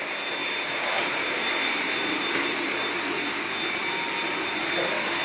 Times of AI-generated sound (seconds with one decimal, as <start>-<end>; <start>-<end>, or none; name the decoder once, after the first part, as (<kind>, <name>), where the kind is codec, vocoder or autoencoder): 0.4-3.4 (vocoder, BigVGAN v2)